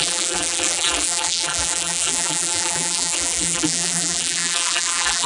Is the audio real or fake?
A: fake